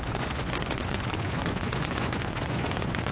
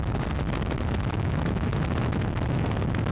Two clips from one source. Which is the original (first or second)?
second